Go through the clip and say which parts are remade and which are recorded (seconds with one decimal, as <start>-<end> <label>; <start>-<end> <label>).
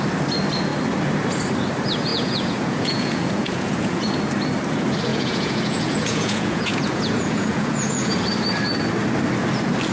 0.0-2.1 recorded; 2.1-4.2 remade; 4.2-5.1 recorded; 5.1-8.2 remade; 8.2-9.9 recorded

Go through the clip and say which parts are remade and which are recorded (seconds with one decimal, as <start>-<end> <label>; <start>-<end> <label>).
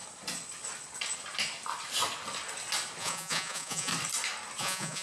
0.0-3.0 recorded; 3.0-3.9 remade; 3.9-4.6 recorded; 4.6-5.0 remade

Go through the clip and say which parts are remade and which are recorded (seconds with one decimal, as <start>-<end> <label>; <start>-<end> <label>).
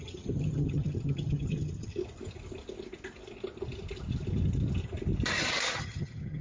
0.0-2.0 remade; 2.0-5.8 recorded; 5.8-6.4 remade